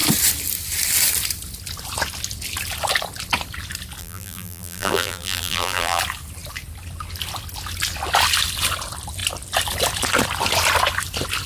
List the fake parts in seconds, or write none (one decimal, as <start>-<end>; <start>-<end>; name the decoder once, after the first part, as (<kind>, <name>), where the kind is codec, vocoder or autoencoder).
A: 4.0-6.0 (vocoder, BigVGAN v2)